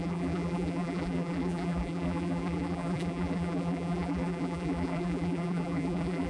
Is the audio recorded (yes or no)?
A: no